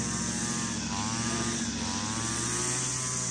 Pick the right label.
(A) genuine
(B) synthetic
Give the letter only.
A